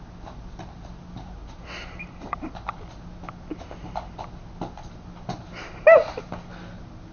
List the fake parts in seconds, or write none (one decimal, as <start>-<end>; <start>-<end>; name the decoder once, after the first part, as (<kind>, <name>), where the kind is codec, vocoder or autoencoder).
1.4-2.4 (vocoder, BigVGAN v2)